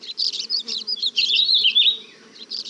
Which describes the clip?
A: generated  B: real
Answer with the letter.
A